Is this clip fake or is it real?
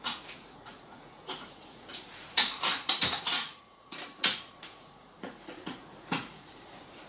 fake